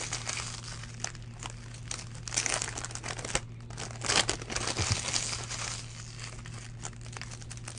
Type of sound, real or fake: real